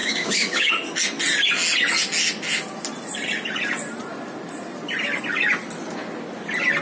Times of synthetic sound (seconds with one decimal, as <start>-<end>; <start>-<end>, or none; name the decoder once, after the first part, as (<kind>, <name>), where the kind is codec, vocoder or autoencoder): 0.0-0.7 (codec, DAC)